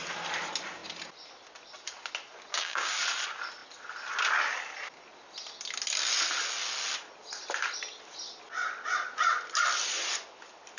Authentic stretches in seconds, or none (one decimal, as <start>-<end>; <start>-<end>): 0.0-2.5; 3.0-10.8